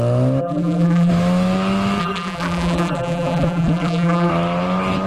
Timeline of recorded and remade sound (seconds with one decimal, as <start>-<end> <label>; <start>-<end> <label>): 0.0-0.4 recorded; 0.4-1.1 remade; 1.1-2.0 recorded; 2.0-4.3 remade; 4.3-5.1 recorded